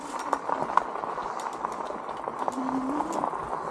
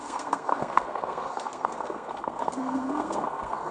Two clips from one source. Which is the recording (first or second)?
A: first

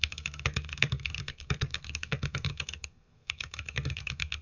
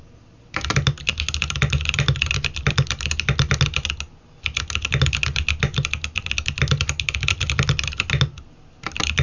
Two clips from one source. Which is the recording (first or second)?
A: second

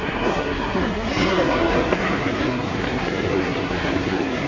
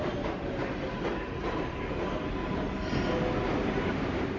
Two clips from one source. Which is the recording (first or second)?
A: second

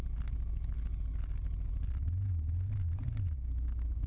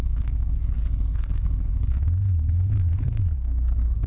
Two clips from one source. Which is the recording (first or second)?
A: first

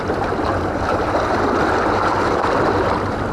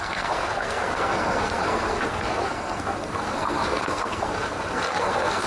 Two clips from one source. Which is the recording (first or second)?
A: first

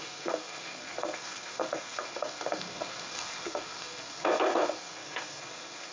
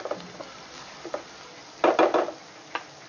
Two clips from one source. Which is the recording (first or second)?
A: second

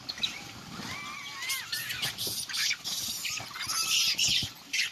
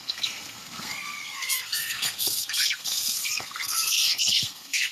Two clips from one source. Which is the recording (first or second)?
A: first